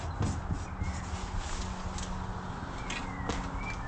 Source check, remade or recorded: recorded